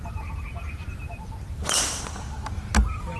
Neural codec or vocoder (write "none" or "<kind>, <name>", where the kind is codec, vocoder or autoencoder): none